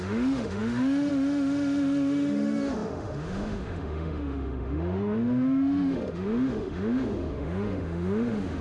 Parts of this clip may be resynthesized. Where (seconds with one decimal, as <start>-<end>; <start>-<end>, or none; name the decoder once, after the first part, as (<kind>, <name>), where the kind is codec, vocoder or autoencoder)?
0.0-8.6 (autoencoder, DAC-VAE)